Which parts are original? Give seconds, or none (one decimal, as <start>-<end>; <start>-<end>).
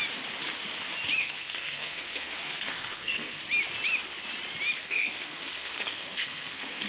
0.0-1.2; 3.4-4.8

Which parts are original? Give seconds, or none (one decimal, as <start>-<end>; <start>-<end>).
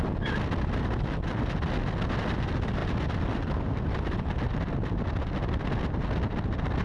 0.0-2.8; 3.5-6.8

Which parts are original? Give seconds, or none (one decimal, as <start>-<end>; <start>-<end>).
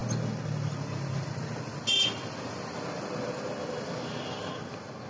0.0-5.1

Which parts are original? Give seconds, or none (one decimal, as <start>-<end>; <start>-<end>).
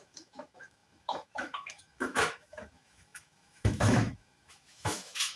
none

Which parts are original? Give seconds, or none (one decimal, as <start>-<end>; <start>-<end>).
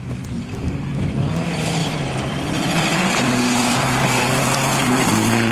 0.0-1.8; 4.2-5.5